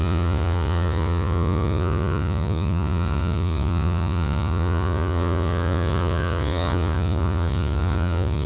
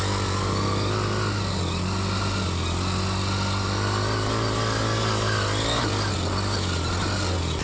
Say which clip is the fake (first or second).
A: first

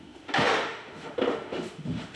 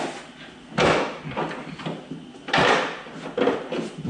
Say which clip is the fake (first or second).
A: first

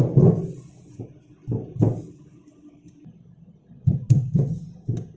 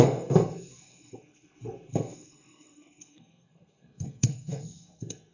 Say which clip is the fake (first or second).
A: second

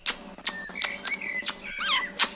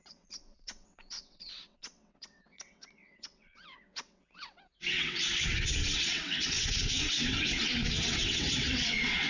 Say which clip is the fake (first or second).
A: second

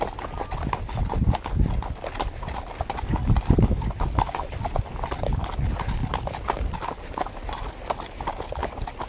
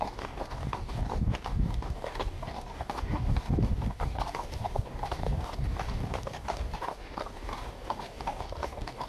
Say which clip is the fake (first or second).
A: second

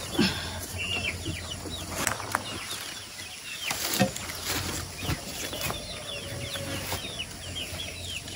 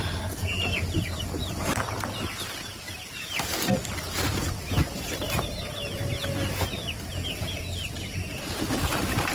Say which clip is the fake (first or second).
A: second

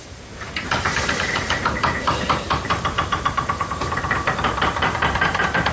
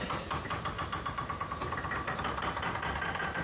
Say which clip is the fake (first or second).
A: first